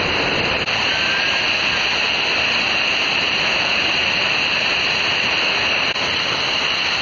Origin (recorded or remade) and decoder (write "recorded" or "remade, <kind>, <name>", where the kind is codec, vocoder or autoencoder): recorded